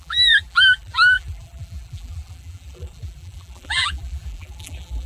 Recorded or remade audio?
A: remade